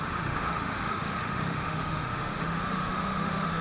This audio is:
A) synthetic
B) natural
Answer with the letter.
A